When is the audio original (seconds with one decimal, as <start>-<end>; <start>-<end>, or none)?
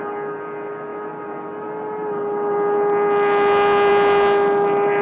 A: 0.0-5.0